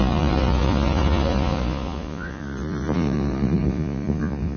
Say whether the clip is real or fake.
fake